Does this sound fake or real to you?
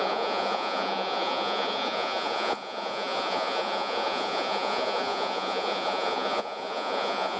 fake